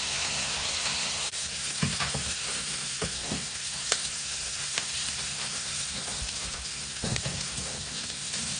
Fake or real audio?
fake